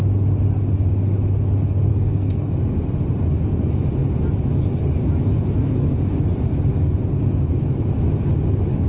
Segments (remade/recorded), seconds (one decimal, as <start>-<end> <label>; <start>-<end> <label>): 0.0-1.9 recorded; 1.9-2.5 remade; 2.5-8.9 recorded